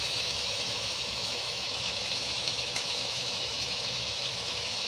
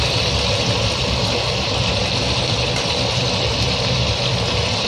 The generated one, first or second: first